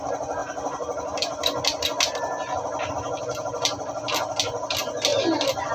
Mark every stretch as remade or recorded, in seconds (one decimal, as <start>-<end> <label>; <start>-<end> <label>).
0.0-5.7 recorded